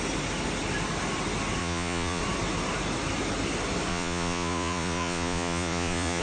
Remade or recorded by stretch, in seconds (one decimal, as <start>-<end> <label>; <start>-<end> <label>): 0.0-1.6 recorded; 1.6-2.2 remade; 2.2-3.9 recorded; 3.9-6.2 remade